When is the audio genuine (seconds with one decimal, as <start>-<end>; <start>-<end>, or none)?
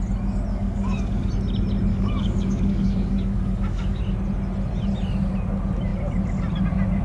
0.0-0.5; 1.3-1.9; 4.0-7.0